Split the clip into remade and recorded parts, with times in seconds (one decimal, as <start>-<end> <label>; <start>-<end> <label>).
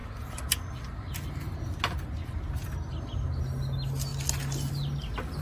0.0-5.4 recorded